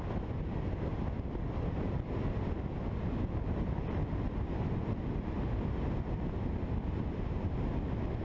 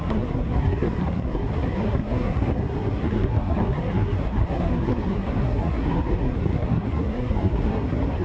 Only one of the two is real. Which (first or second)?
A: first